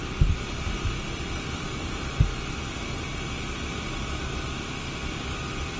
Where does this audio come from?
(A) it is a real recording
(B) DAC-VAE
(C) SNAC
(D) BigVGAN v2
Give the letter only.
D